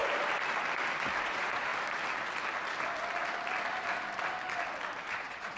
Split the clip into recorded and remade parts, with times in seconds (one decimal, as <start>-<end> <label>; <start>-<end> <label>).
0.0-1.2 recorded; 1.2-1.7 remade; 1.7-5.1 recorded; 5.1-5.6 remade